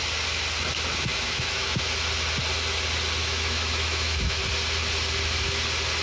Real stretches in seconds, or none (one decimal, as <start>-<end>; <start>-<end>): 0.0-1.1; 1.9-3.2; 4.4-6.0